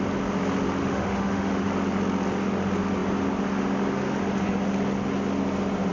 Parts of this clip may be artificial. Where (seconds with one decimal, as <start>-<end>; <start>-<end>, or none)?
0.8-1.7